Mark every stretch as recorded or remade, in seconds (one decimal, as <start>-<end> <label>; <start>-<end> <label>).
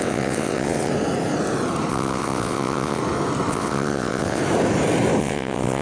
0.0-0.9 remade; 0.9-1.9 recorded; 1.9-3.0 remade; 3.0-3.5 recorded; 3.5-4.4 remade; 4.4-5.2 recorded; 5.2-5.8 remade